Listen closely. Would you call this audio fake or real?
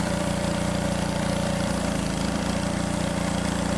fake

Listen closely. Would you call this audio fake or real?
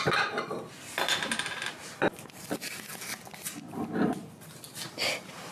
real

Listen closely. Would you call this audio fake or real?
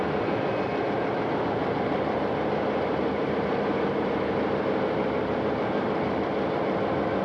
fake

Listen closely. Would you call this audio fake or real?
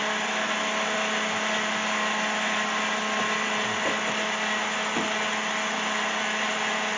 real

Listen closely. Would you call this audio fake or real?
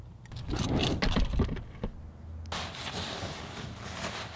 real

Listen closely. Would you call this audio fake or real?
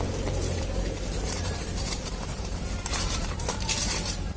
fake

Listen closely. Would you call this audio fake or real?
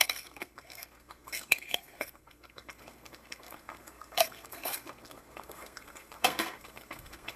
fake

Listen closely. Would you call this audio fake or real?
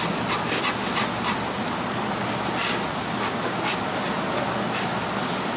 real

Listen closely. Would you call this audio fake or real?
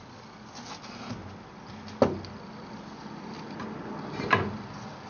real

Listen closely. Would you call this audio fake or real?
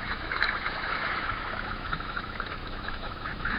fake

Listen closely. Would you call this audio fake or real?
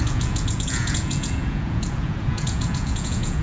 fake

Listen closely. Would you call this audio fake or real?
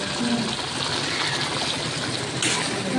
real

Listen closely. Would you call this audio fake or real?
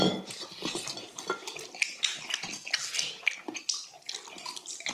real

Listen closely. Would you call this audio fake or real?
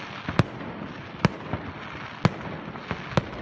real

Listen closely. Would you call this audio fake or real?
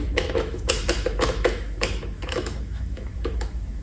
fake